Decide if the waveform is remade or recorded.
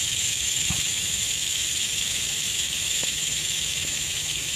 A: remade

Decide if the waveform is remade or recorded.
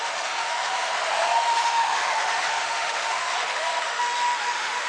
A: remade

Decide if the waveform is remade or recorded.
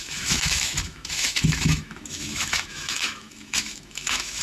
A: remade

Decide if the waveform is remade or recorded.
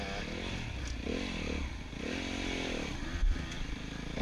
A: recorded